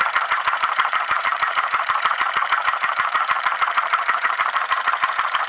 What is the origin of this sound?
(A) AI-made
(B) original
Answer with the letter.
A